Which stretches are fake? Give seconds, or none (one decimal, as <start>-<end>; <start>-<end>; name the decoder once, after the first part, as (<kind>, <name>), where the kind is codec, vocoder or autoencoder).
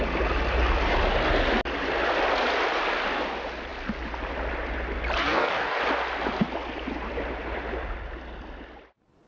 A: 5.2-5.8 (codec, DAC)